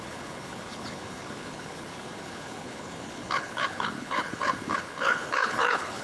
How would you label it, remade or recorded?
remade